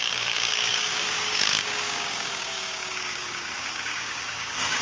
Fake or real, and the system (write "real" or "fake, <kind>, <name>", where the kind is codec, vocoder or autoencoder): fake, codec, DAC